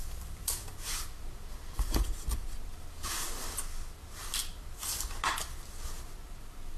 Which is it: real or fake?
real